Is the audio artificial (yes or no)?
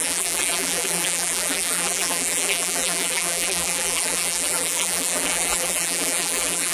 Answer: yes